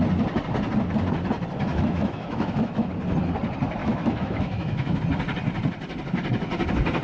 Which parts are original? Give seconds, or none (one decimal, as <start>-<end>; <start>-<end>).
0.0-1.7; 2.9-3.8; 5.0-7.0